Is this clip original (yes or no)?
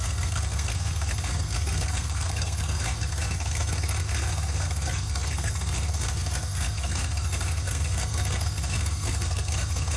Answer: no